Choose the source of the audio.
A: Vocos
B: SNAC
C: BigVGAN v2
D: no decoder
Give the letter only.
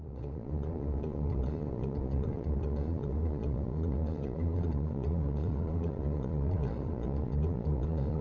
A